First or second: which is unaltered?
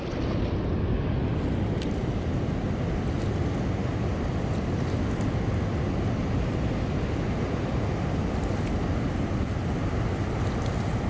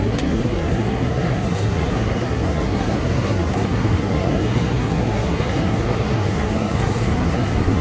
first